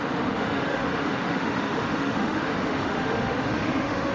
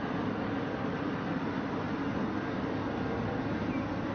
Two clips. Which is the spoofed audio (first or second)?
first